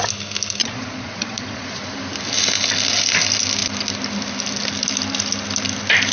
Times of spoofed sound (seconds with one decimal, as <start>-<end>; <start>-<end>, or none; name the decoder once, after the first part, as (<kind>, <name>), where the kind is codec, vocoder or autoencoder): 0.6-1.8 (vocoder, Vocos)